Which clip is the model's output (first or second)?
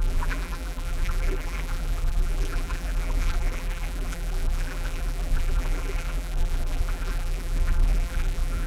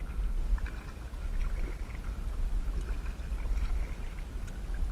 first